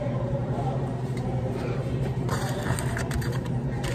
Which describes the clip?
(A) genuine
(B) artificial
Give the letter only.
B